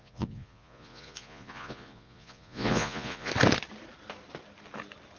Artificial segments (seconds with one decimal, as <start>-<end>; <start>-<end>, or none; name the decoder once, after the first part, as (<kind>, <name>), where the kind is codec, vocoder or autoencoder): 0.0-3.3 (vocoder, Vocos)